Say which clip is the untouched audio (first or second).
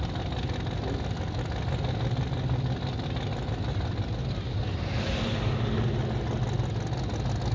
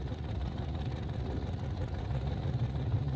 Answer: first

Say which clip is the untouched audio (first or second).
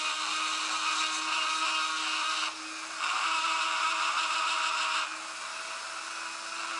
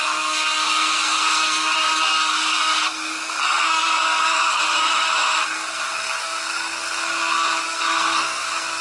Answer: first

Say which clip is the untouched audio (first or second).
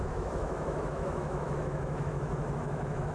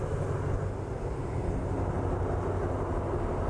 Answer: second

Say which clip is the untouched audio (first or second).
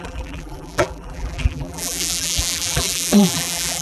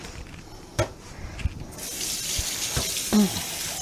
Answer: second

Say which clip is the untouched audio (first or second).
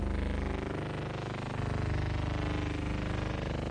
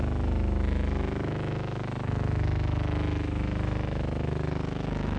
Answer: first